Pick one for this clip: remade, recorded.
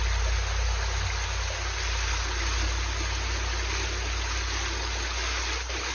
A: recorded